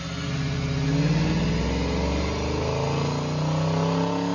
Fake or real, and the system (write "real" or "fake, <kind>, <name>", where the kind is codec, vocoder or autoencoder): real